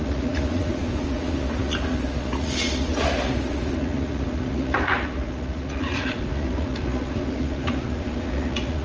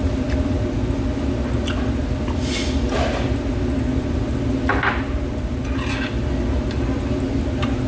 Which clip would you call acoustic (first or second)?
second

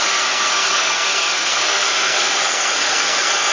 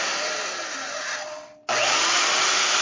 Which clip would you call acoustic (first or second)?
second